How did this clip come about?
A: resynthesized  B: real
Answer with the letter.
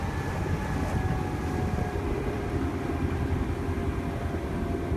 B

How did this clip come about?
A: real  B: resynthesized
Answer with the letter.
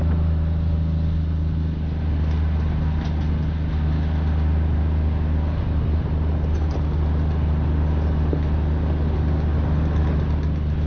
A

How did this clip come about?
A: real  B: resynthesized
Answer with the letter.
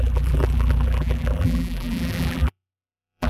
B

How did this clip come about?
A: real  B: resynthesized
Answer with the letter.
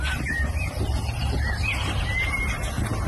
A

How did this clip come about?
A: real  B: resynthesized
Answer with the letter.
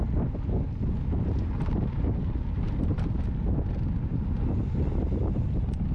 A